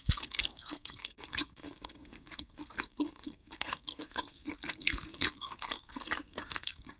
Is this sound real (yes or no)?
no